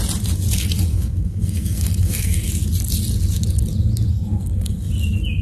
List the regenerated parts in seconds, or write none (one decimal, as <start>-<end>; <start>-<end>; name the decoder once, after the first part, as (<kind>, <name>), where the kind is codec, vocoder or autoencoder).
0.9-2.5 (codec, SNAC); 4.1-4.9